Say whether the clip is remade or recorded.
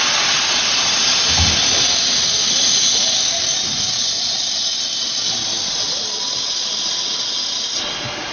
recorded